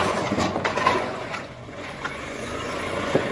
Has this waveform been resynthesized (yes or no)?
yes